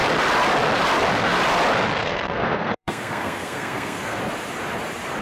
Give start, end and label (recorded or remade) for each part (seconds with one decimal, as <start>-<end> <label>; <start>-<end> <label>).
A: 0.0-2.0 recorded; 2.0-4.2 remade; 4.2-5.2 recorded